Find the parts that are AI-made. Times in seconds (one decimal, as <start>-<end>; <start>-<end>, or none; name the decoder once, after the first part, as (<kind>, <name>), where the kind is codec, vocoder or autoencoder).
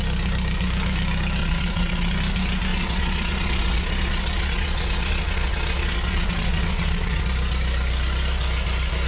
1.4-2.1 (vocoder, Vocos); 2.7-7.2